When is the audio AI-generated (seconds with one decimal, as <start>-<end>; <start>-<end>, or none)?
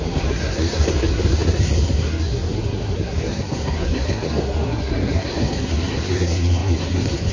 0.0-7.3